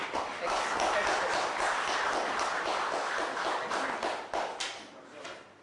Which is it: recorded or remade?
recorded